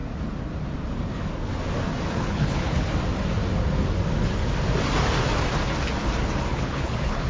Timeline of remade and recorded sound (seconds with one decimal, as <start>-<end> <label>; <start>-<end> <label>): 0.0-2.1 recorded; 2.1-2.9 remade; 2.9-6.5 recorded; 6.5-7.3 remade